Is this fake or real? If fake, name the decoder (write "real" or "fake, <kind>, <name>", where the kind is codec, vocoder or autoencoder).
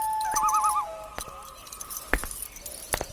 real